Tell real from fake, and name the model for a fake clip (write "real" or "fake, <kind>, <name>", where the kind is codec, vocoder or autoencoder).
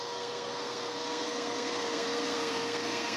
fake, codec, SNAC